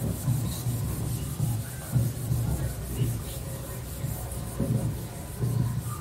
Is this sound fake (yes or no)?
no